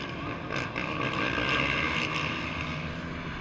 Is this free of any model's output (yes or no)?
yes